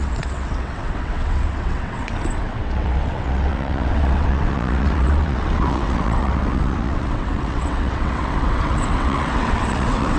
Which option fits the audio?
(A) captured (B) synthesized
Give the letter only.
B